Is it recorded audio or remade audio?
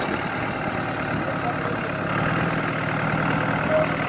recorded